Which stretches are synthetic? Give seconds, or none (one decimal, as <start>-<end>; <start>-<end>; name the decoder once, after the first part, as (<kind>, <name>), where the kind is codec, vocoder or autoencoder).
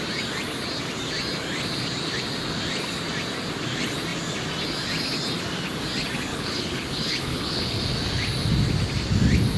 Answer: 6.3-7.8 (codec, HILCodec)